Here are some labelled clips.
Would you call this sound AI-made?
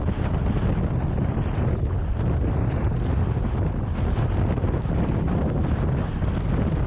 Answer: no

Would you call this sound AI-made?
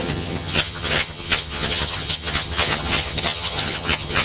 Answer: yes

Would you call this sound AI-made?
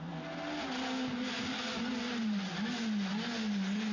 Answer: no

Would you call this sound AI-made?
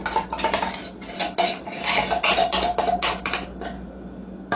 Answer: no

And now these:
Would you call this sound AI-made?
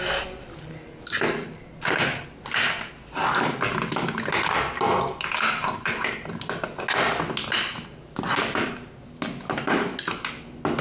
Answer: no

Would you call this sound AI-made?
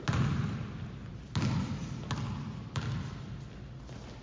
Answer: no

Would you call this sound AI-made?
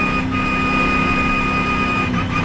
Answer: no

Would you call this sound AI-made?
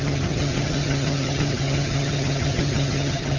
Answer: yes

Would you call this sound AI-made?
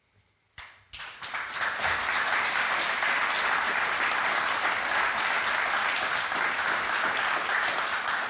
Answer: no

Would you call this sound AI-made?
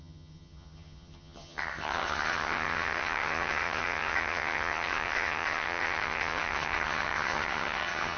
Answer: yes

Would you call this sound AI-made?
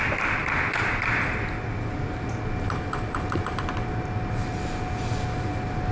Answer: no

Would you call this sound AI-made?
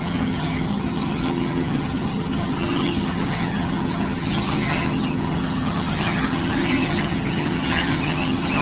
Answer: yes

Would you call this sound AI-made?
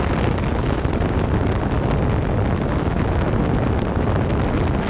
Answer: no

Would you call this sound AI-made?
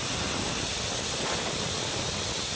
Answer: no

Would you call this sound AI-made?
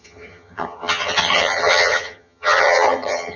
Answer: yes